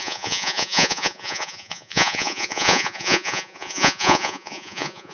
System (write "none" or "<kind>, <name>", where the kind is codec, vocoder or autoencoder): vocoder, Vocos